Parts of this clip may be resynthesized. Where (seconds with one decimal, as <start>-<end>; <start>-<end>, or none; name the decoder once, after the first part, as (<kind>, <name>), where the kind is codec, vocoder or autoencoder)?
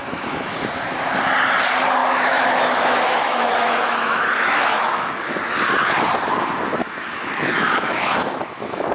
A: 0.0-0.6 (autoencoder, DAC-VAE); 2.0-5.4; 6.8-8.9